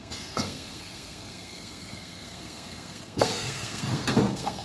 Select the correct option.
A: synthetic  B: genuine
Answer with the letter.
A